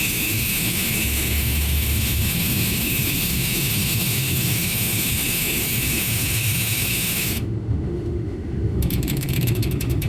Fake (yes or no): yes